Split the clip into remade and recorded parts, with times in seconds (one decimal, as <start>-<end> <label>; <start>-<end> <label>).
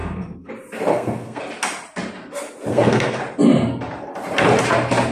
0.0-0.5 remade; 0.5-0.9 recorded; 0.9-1.4 remade; 1.4-2.7 recorded; 2.7-3.2 remade; 3.2-5.1 recorded